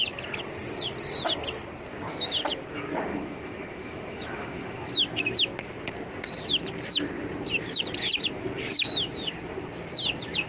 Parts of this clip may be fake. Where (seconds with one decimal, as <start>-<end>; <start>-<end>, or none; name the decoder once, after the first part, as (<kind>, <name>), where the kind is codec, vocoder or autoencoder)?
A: 3.1-4.9 (autoencoder, DAC-VAE)